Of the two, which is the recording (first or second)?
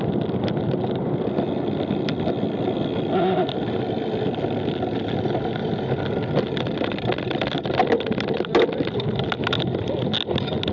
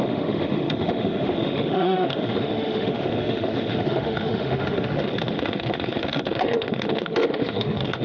first